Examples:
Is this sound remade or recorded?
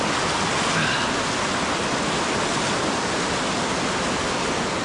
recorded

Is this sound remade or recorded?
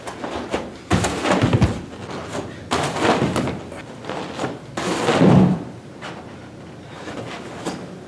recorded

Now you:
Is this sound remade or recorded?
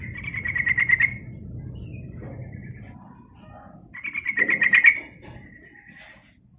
recorded